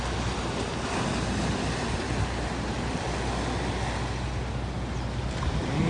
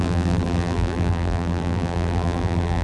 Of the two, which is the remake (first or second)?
second